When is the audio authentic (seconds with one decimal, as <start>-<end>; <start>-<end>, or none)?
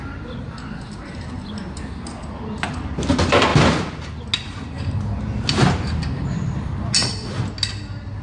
0.0-8.2